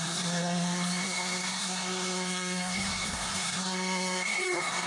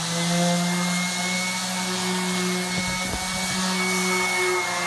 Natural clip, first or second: second